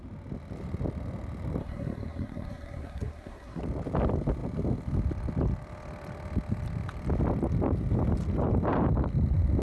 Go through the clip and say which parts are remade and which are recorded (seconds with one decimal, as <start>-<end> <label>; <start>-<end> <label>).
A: 0.0-1.6 recorded; 1.6-3.6 remade; 3.6-9.6 recorded